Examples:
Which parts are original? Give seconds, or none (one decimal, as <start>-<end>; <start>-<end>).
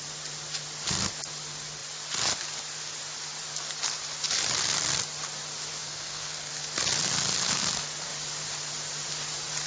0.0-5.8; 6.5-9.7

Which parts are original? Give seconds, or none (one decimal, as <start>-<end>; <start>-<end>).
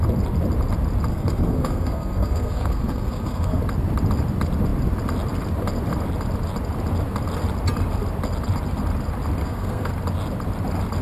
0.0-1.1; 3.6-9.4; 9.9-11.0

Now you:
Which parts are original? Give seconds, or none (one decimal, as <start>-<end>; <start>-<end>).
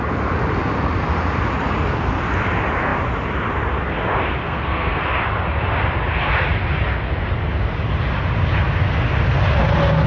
0.0-4.4; 5.0-10.1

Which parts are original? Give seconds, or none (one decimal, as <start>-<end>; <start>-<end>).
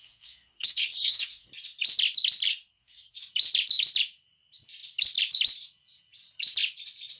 1.5-2.5; 3.2-7.2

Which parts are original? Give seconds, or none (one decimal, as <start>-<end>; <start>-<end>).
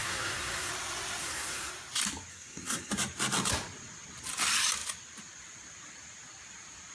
0.7-1.2; 1.7-2.3; 2.9-6.9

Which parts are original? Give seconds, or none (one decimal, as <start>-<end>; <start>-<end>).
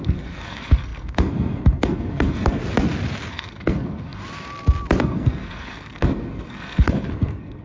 2.6-3.3; 4.2-5.0